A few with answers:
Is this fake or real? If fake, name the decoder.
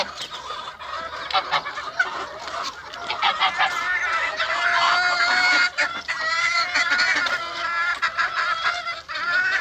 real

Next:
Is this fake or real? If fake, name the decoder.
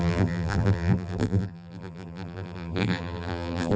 fake, vocoder, BigVGAN v2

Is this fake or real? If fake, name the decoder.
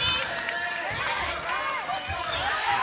fake, vocoder, BigVGAN v2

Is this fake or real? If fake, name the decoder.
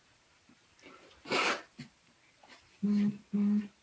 fake, vocoder, BigVGAN v2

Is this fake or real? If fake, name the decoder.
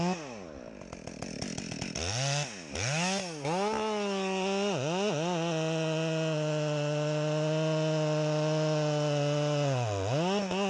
real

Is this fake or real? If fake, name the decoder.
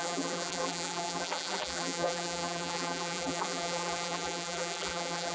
fake, vocoder, BigVGAN v2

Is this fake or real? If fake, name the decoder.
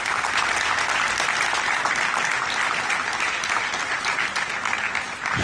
real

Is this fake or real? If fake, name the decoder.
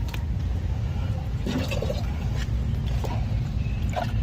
fake, vocoder, BigVGAN v2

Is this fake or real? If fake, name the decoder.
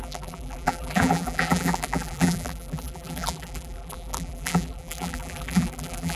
fake, vocoder, BigVGAN v2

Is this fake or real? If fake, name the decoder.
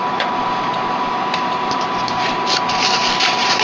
fake, vocoder, BigVGAN v2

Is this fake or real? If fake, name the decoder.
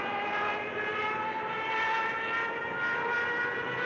real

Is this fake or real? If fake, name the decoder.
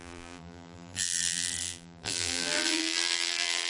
fake, vocoder, BigVGAN v2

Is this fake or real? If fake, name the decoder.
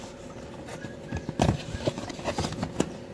real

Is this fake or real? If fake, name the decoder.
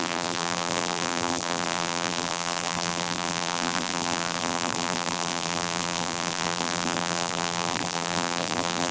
fake, vocoder, BigVGAN v2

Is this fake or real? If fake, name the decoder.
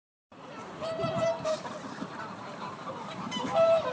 fake, vocoder, BigVGAN v2